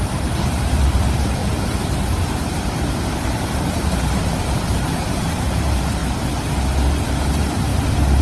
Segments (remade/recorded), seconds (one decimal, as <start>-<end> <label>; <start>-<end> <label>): 0.0-6.0 remade; 6.0-6.9 recorded; 6.9-7.7 remade; 7.7-8.2 recorded